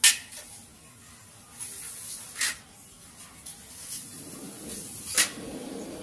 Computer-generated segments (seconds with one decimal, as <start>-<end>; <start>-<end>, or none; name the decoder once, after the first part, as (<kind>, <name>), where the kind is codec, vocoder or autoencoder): none